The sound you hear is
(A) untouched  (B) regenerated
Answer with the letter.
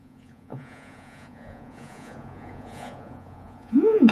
B